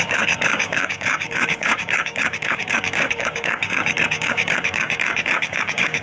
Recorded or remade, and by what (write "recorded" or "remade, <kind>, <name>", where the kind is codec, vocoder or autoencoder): remade, codec, DAC